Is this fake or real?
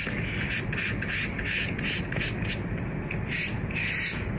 real